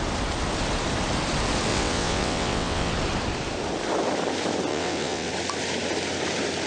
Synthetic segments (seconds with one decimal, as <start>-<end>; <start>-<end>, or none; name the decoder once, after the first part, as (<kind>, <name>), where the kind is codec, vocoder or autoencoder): 1.7-2.9 (vocoder, WaveNeXt); 4.7-5.3